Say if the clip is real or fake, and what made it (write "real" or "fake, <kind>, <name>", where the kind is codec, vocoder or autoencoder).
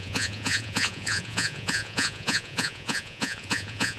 fake, vocoder, Vocos